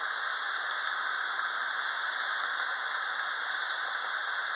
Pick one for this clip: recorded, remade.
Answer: recorded